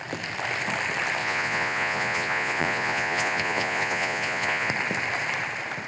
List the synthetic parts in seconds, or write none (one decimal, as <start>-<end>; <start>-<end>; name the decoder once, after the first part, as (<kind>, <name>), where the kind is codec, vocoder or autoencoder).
1.2-4.7 (vocoder, Vocos)

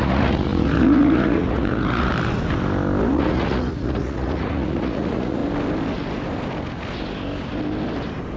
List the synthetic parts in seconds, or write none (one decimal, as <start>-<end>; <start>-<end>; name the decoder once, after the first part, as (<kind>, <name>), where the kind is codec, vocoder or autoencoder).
0.0-2.1 (vocoder, Vocos); 3.1-5.4

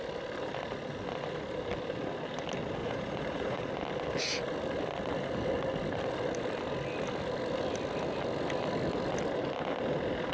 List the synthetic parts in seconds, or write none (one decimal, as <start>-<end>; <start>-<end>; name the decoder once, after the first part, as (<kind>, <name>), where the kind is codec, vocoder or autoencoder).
2.8-3.7 (vocoder, Vocos)

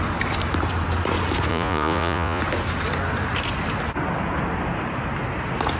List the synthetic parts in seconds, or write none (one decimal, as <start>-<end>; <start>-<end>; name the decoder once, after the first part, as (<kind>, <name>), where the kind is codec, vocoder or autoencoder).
1.5-2.4 (vocoder, Vocos)

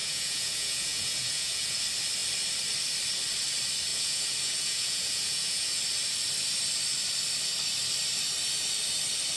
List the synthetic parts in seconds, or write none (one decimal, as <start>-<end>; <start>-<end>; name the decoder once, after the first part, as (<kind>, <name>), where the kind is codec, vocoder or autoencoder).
0.0-1.8 (vocoder, Vocos); 3.9-5.8

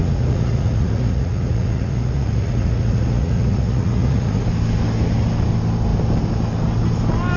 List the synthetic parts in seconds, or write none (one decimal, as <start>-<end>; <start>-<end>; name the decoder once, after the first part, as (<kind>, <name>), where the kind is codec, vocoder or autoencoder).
0.0-4.4 (vocoder, Vocos)

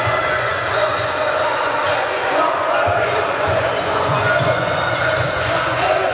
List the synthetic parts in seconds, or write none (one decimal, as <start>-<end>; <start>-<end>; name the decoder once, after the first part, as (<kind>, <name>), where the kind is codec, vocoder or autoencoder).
0.0-6.1 (vocoder, Vocos)

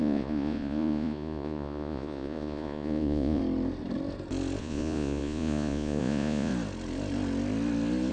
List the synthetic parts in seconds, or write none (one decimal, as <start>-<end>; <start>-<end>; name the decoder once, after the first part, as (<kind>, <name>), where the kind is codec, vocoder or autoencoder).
0.0-3.4 (vocoder, Vocos); 4.6-6.5